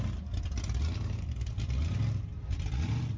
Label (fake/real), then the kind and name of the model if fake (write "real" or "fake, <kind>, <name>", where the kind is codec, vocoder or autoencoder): real